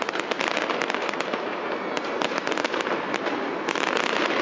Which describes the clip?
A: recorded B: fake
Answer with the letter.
A